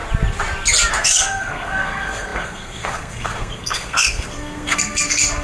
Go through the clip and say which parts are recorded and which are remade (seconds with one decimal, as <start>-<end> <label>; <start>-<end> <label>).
0.0-0.9 recorded; 0.9-5.4 remade